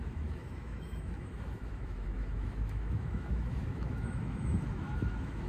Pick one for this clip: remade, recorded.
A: remade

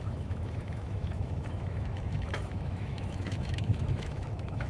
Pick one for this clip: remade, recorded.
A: remade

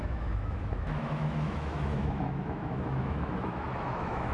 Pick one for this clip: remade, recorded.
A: remade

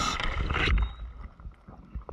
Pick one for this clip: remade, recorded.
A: recorded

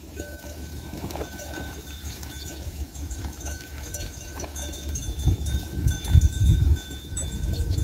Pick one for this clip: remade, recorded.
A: remade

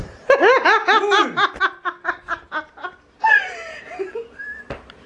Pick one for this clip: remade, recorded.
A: recorded